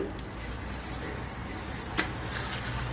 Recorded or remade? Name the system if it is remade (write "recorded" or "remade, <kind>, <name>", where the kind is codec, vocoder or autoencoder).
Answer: recorded